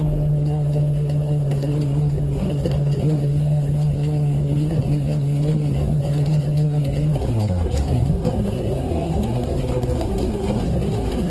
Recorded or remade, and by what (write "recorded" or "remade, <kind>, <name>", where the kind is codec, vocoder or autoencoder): remade, codec, SNAC